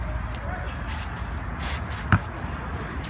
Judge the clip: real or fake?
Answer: real